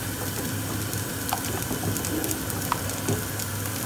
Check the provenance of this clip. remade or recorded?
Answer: recorded